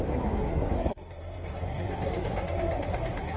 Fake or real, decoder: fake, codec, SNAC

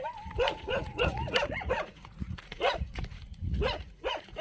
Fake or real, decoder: fake, vocoder, Vocos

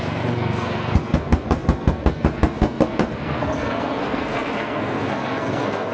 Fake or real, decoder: fake, codec, SNAC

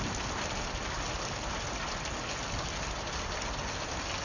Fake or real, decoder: real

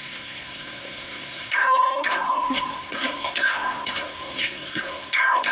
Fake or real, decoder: fake, codec, SNAC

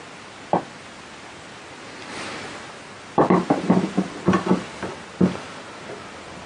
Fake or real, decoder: real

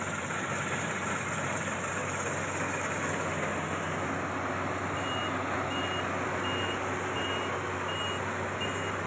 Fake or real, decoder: real